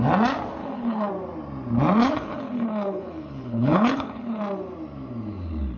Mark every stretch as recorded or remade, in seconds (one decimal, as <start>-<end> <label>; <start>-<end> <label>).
0.0-0.6 recorded; 0.6-1.1 remade; 1.1-2.0 recorded; 2.0-4.4 remade; 4.4-5.8 recorded